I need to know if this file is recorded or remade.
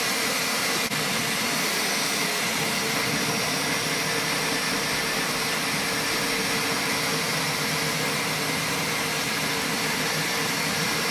recorded